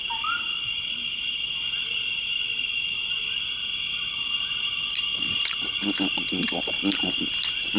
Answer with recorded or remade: recorded